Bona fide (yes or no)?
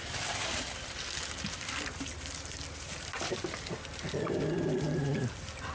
yes